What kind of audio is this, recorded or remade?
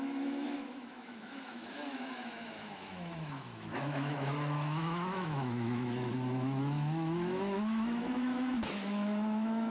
remade